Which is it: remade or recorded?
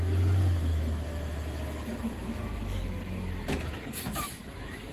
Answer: remade